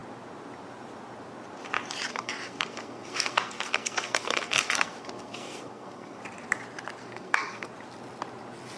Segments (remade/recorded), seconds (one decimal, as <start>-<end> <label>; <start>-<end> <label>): 0.0-2.1 recorded; 2.1-6.2 remade; 6.2-7.0 recorded; 7.0-7.7 remade; 7.7-8.8 recorded